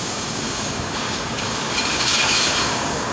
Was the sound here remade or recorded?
remade